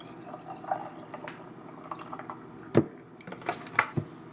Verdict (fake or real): real